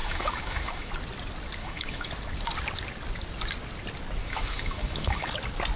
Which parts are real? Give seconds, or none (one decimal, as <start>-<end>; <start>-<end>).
0.9-1.6; 2.1-4.2; 5.3-5.8